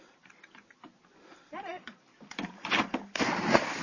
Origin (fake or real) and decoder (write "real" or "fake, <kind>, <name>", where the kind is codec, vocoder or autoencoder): fake, vocoder, BigVGAN v2